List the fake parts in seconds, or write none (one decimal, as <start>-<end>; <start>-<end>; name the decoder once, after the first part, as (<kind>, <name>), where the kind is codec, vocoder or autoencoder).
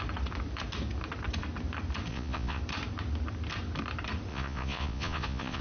2.1-2.6 (vocoder, Vocos); 4.3-5.6